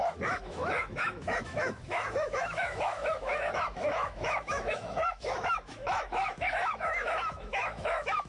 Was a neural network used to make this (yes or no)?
yes